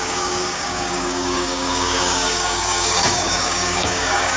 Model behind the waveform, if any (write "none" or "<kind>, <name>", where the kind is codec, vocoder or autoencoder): codec, DAC